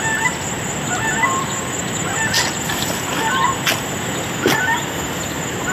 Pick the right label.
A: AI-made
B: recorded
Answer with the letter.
B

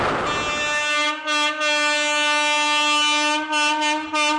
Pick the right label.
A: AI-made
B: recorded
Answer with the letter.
B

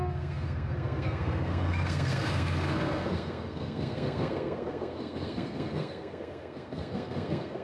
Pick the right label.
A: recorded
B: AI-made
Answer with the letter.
B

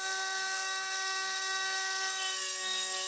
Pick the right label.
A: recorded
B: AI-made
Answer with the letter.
B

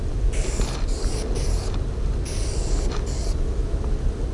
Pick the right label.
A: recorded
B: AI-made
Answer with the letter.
A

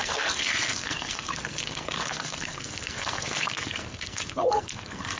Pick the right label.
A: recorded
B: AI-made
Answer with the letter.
B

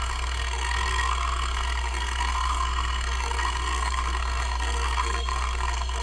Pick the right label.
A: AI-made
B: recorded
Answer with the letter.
A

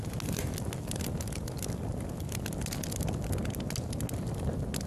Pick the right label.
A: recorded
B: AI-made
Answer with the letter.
A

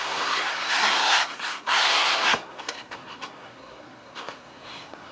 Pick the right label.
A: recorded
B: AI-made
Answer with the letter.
B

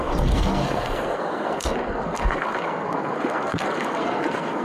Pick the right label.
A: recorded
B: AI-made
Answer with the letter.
B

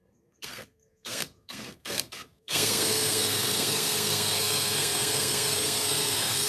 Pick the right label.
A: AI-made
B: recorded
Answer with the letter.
A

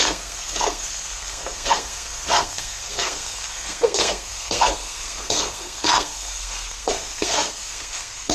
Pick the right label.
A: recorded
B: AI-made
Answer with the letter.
B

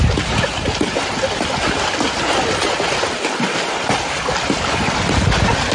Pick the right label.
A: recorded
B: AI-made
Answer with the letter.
A